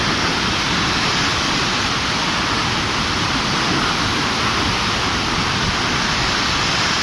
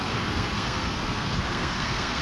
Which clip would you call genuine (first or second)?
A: first